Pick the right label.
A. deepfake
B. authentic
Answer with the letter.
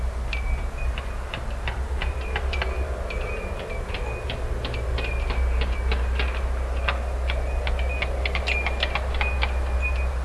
B